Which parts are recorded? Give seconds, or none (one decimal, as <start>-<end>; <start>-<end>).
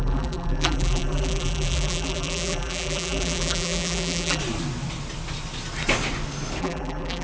4.4-6.6